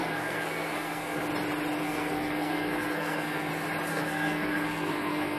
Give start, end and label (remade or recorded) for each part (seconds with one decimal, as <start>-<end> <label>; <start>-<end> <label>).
0.0-1.2 remade; 1.2-1.8 recorded; 1.8-3.5 remade; 3.5-3.9 recorded; 3.9-5.4 remade